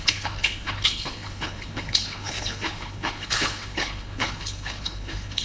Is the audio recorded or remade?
remade